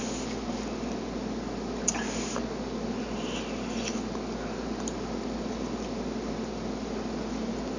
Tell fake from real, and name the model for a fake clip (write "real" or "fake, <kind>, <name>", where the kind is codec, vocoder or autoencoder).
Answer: real